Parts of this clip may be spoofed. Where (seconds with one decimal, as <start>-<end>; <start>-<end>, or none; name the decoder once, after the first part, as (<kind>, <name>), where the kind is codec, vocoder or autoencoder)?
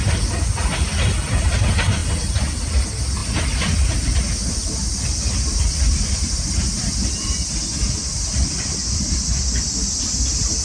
none